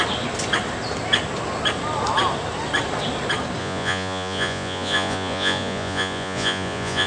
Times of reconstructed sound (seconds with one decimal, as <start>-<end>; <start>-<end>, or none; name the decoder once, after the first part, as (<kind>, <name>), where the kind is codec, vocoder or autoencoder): 3.6-7.1 (vocoder, Vocos)